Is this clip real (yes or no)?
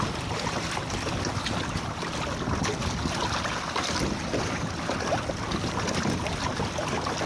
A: yes